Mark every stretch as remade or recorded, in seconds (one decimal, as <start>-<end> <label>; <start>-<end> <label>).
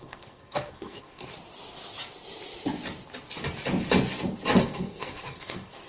0.0-1.3 remade; 1.3-4.6 recorded; 4.6-5.9 remade